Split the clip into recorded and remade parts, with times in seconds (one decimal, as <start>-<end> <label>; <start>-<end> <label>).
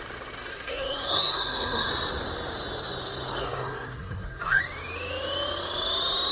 0.0-0.5 recorded; 0.5-1.9 remade; 1.9-3.4 recorded; 3.4-4.6 remade; 4.6-6.3 recorded